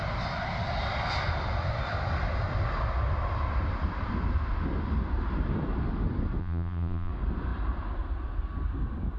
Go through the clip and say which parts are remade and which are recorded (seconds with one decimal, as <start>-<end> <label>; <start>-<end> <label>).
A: 0.0-6.4 recorded; 6.4-7.1 remade; 7.1-9.2 recorded